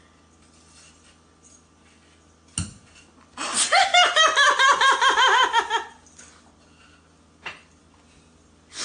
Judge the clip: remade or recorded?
recorded